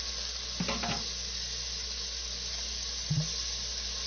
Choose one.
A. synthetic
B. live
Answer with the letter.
B